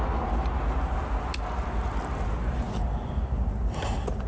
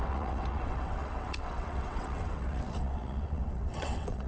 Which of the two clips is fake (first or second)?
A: second